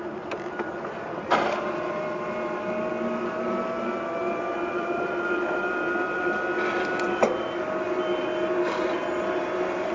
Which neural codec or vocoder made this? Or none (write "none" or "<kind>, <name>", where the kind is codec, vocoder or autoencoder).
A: none